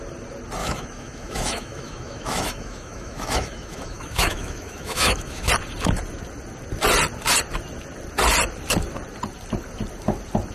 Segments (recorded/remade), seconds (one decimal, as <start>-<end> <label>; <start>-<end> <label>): 0.0-0.6 recorded; 0.6-5.5 remade; 5.5-10.5 recorded